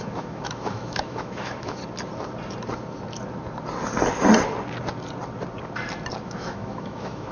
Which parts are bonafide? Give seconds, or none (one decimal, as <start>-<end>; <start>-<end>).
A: 1.8-6.2